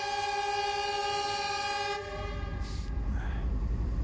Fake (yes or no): no